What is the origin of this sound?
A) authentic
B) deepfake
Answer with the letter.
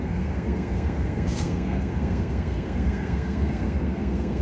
B